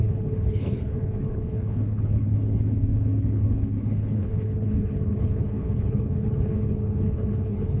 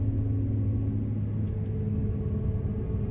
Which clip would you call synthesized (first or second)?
first